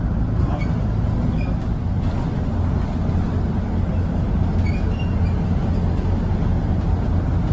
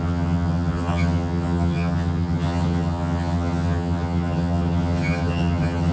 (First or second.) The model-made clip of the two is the second